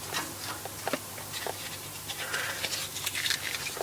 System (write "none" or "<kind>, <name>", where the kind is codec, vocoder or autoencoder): none